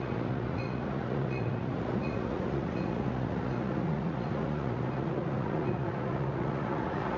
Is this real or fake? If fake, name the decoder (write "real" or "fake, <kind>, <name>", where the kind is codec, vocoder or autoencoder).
fake, vocoder, Vocos